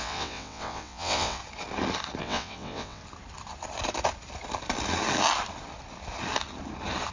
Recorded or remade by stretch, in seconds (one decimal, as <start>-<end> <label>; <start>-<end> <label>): 0.0-1.4 remade; 1.4-2.2 recorded; 2.2-3.0 remade; 3.0-7.1 recorded